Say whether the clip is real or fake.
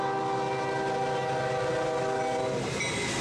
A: real